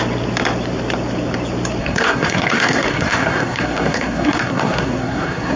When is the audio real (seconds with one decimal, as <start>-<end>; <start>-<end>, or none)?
0.0-1.8